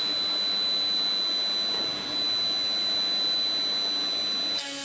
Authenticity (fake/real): real